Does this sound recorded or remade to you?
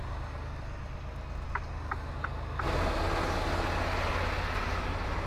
recorded